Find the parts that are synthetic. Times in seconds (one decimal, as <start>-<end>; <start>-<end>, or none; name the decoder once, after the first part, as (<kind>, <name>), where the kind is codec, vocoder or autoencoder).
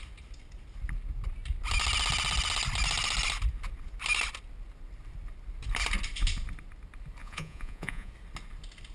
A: 7.2-8.1 (vocoder, Vocos)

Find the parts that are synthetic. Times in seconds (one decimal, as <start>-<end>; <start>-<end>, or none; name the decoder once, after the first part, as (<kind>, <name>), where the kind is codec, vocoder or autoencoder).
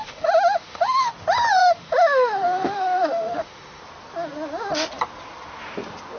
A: 0.0-1.1 (autoencoder, DAC-VAE); 1.6-3.8